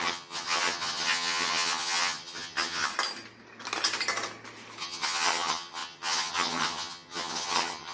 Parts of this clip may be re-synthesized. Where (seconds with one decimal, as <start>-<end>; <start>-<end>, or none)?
0.0-2.9; 4.8-7.9